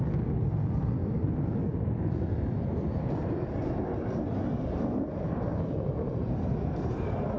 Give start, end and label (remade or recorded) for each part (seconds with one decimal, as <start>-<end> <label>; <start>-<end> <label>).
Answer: 0.0-7.4 recorded